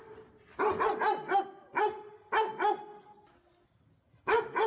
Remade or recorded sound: recorded